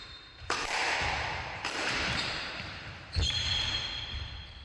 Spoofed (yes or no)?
yes